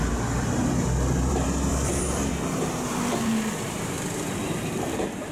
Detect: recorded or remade remade